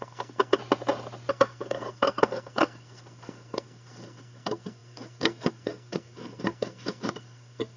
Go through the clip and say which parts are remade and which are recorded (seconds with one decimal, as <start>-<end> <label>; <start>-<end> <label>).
0.0-0.6 remade; 0.6-1.3 recorded; 1.3-7.8 remade